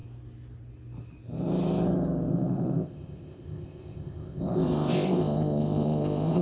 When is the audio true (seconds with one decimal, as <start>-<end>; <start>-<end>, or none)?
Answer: 0.0-2.3

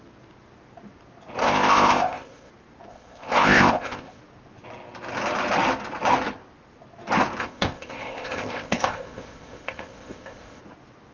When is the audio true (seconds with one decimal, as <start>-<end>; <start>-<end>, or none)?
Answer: 0.0-1.4; 2.5-2.9; 4.2-7.4; 10.6-11.1

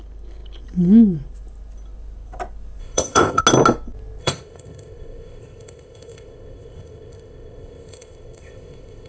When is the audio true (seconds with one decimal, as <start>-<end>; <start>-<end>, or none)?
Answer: 0.0-2.8; 3.4-4.2

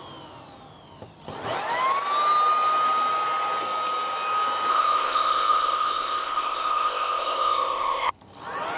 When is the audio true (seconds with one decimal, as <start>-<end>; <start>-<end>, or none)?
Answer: 0.0-4.7; 8.1-8.8

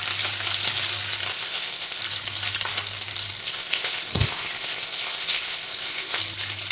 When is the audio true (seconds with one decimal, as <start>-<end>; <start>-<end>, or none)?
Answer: 0.0-1.3; 2.0-3.4; 6.2-6.7

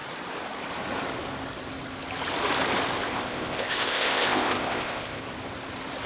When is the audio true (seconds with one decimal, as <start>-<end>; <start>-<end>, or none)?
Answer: 0.0-3.1; 5.2-6.1

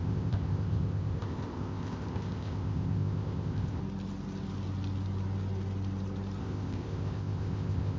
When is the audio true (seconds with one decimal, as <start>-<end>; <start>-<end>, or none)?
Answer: 3.8-6.4